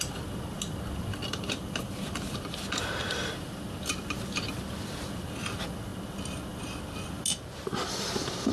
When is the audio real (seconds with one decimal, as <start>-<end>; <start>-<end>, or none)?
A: 0.0-8.5